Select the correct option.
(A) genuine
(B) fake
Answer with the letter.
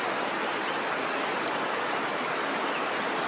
B